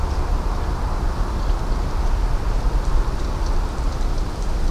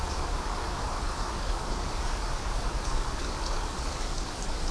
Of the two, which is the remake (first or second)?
second